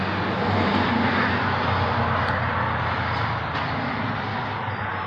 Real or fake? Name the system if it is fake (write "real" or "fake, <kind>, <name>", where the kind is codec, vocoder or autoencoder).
real